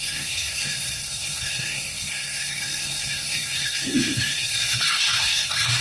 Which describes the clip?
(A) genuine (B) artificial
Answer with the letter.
B